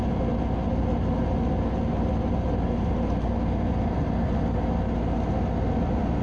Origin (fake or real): real